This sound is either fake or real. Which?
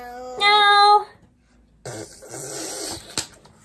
real